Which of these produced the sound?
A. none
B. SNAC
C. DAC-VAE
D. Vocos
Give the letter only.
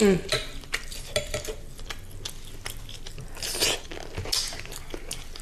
A